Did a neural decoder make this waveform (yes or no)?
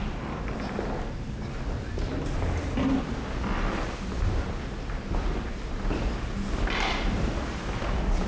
no